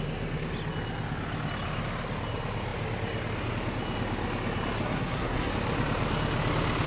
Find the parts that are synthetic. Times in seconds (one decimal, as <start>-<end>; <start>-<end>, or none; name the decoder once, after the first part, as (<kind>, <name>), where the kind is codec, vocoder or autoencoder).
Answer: 4.8-5.5 (codec, SNAC)

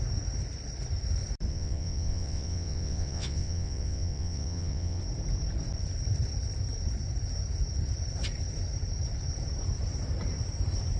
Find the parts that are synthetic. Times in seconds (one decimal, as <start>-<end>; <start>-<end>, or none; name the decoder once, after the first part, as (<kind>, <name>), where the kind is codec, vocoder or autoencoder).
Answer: 1.5-5.0 (vocoder, WaveNeXt)

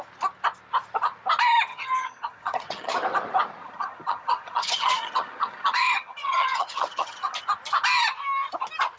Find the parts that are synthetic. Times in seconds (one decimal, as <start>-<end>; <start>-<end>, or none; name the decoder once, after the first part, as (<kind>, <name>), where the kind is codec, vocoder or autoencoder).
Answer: 1.7-2.9 (vocoder, HiFi-GAN); 3.6-7.4

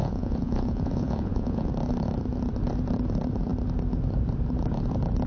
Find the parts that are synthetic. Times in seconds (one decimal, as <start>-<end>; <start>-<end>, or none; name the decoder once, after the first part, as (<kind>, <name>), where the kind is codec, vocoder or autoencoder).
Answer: 0.0-1.7 (vocoder, Vocos)

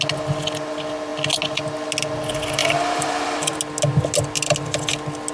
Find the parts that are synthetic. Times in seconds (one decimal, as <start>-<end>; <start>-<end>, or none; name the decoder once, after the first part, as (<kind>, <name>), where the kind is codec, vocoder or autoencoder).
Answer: 2.6-3.6 (vocoder, BigVGAN v2)

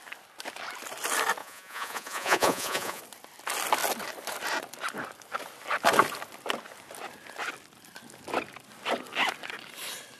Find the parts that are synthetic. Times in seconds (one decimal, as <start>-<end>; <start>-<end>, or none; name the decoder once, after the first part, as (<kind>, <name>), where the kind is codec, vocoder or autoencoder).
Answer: 1.4-3.0 (vocoder, Vocos)

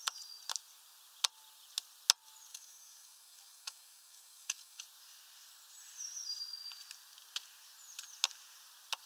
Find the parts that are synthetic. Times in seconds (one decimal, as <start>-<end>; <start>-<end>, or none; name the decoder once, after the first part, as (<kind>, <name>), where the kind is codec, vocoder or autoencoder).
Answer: 2.5-4.8 (codec, DAC)